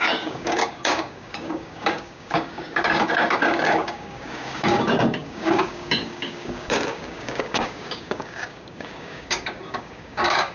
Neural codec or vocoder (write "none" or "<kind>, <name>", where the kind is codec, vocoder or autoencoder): codec, DAC